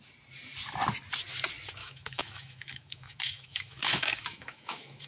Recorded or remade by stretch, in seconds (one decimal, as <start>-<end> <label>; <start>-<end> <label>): 0.0-1.8 recorded; 1.8-5.1 remade